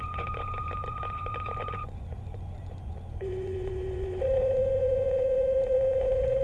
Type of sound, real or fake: fake